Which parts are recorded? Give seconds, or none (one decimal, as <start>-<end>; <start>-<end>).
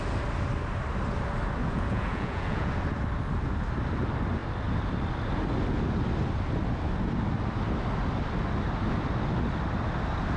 0.0-1.6; 2.7-10.4